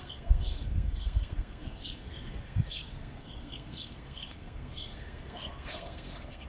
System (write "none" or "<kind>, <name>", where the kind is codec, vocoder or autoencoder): codec, SNAC